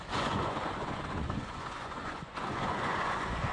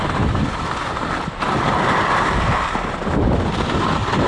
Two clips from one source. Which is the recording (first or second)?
second